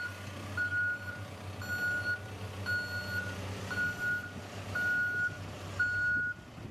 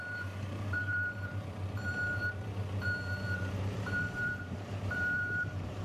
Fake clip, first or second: second